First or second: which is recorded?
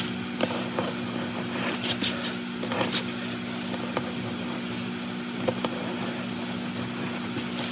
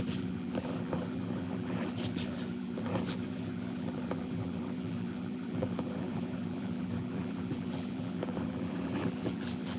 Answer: first